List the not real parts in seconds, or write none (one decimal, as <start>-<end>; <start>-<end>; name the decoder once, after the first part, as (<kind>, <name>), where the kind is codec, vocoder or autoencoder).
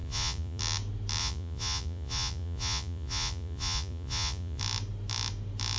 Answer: 0.0-0.6 (vocoder, Vocos); 1.2-4.6